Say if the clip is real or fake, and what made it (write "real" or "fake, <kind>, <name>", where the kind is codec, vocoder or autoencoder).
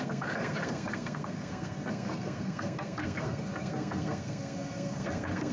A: fake, codec, SNAC